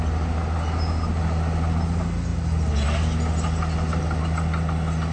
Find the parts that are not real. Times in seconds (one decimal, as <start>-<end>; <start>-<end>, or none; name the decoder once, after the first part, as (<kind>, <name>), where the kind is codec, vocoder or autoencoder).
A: none